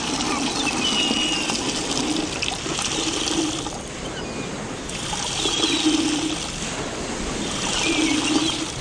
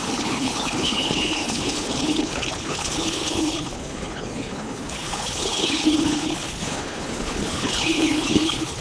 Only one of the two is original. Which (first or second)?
first